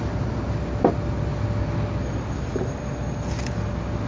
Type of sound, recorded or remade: recorded